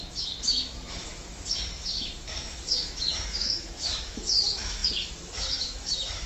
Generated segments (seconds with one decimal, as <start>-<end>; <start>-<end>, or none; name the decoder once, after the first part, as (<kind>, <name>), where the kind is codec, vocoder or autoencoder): 0.0-6.3 (autoencoder, DAC-VAE)